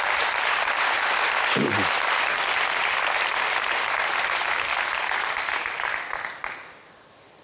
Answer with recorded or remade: recorded